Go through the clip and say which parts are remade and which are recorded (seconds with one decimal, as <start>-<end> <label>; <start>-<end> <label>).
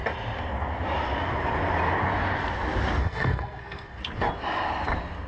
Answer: 0.0-3.0 recorded; 3.0-4.0 remade; 4.0-5.3 recorded